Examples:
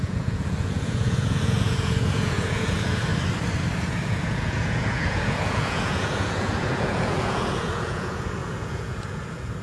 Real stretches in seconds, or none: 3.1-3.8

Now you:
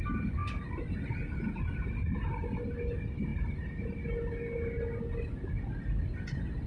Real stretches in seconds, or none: 0.0-6.7

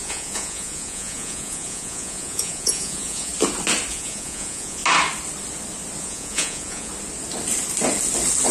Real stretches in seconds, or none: 3.3-3.9; 4.8-6.0; 6.9-8.5